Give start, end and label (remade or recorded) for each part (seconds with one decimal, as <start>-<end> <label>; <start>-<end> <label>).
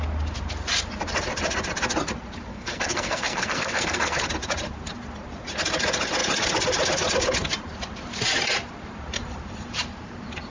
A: 0.0-2.5 recorded; 2.5-4.2 remade; 4.2-10.5 recorded